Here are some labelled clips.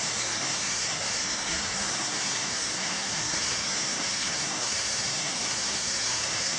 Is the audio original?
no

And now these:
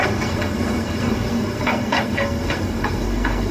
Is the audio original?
no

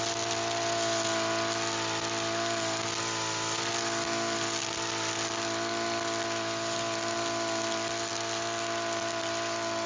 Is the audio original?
yes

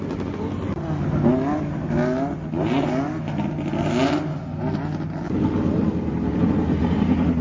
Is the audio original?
yes